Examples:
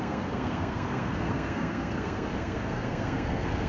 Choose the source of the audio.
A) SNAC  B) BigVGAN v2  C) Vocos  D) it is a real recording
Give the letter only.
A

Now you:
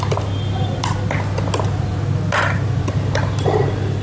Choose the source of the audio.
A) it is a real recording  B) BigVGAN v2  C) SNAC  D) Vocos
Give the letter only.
A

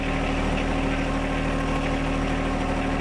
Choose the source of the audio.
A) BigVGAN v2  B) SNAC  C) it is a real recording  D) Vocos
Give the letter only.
C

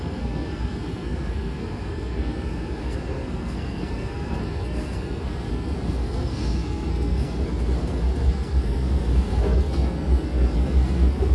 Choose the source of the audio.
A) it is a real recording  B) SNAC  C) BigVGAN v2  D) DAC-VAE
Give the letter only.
B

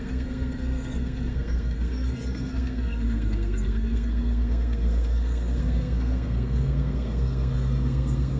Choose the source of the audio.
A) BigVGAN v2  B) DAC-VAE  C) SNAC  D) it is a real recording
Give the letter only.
C